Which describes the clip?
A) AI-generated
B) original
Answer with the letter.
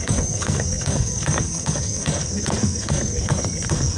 A